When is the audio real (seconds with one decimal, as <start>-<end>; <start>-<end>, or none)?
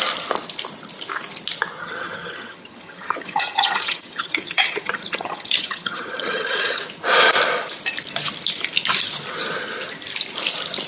0.0-1.8; 6.8-10.9